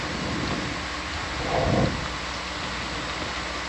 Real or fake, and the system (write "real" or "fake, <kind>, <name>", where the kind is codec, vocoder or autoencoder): real